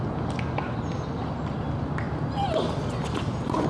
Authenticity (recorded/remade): recorded